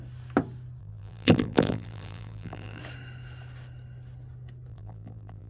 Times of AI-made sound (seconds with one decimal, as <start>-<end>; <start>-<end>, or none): 0.8-2.8; 4.7-5.5